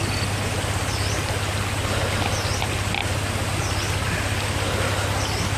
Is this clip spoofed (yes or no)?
no